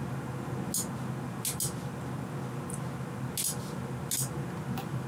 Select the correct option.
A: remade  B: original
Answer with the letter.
B